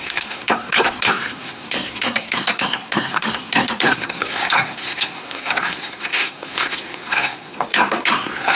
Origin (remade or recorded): remade